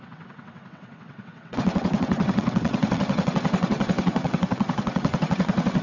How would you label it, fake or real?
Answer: fake